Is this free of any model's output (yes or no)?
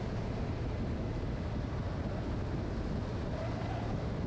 yes